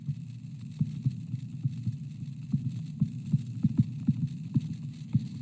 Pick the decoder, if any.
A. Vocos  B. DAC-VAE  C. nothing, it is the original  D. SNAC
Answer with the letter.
C